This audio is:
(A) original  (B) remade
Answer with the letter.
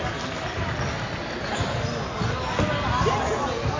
A